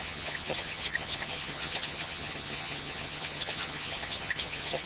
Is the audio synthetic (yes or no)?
yes